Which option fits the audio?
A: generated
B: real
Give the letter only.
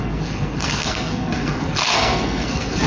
A